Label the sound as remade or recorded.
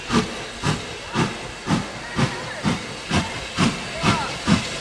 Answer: recorded